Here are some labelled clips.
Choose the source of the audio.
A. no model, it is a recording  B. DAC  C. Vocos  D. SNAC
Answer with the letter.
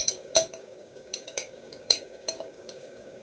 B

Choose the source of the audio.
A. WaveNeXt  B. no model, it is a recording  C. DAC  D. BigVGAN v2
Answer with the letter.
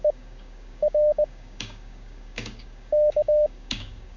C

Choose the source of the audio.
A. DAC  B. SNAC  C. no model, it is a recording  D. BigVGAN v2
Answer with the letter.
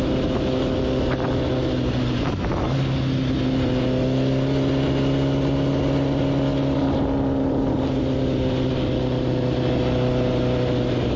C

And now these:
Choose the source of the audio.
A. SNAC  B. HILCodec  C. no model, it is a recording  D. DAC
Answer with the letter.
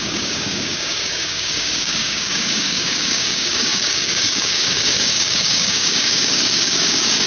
D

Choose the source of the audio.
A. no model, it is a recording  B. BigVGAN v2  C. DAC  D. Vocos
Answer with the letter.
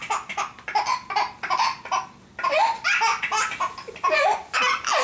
A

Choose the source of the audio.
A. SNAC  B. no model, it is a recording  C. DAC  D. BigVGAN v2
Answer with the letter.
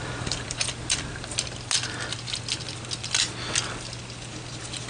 B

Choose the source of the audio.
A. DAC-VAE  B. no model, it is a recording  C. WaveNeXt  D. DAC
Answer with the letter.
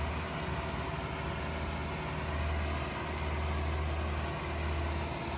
B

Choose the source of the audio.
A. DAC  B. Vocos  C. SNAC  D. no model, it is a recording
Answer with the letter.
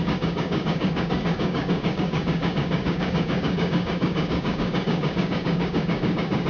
A